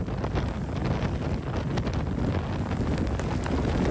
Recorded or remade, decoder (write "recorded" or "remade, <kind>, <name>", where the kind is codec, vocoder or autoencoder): recorded